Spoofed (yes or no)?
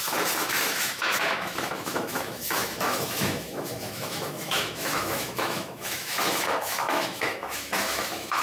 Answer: yes